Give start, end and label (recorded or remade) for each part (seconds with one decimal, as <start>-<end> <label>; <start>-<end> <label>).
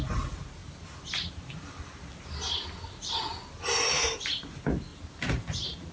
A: 0.0-4.9 recorded; 4.9-5.9 remade